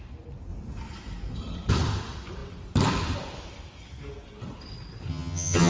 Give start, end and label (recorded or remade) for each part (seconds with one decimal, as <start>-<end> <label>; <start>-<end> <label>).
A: 0.0-5.1 recorded; 5.1-5.7 remade